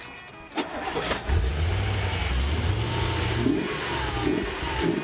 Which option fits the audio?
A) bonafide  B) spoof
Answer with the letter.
A